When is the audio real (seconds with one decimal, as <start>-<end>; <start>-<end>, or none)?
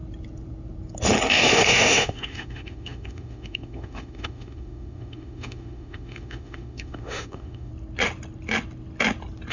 0.0-1.3; 7.7-9.5